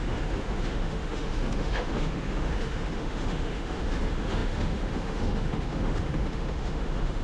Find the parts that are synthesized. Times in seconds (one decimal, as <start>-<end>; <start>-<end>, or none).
0.0-7.2